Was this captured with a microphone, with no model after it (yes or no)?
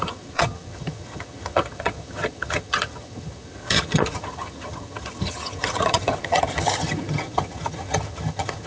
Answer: no